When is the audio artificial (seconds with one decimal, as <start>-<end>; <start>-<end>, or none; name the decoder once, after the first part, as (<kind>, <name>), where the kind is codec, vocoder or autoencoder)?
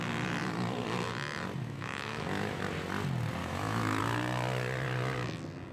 1.6-2.6 (autoencoder, DAC-VAE); 3.4-4.0